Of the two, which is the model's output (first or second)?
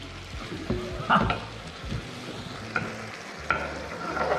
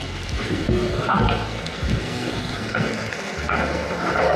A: second